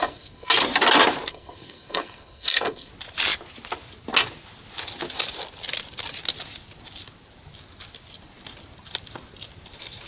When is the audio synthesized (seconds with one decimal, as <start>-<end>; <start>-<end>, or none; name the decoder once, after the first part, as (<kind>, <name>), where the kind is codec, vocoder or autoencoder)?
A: 0.0-0.5 (codec, SNAC); 1.3-2.9